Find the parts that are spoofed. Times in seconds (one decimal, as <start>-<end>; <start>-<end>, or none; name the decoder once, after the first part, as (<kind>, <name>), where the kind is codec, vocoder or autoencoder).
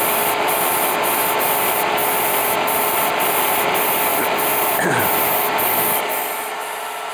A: none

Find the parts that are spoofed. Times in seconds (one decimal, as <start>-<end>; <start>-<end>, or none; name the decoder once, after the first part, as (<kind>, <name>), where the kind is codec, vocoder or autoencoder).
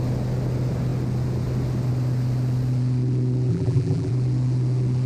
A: 3.5-4.1 (vocoder, BigVGAN v2)